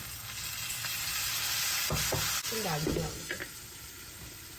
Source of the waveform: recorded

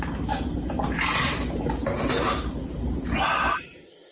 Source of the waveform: recorded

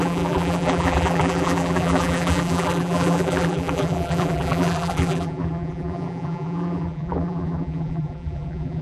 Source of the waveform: remade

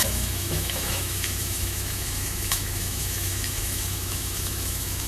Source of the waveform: remade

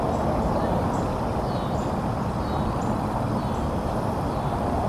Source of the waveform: recorded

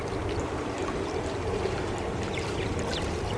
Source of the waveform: recorded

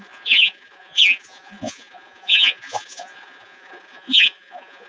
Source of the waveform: remade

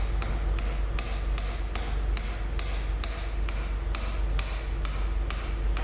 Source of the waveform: recorded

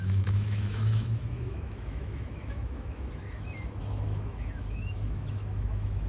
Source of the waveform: remade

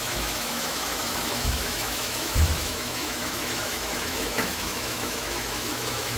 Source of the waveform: remade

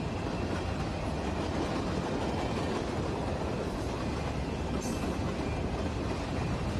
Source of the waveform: recorded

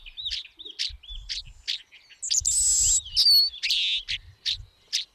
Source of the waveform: recorded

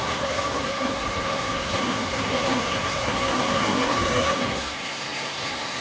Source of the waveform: remade